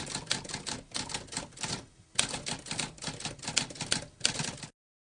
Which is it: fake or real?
real